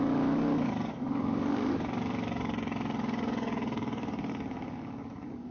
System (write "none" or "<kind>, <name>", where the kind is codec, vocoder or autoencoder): codec, DAC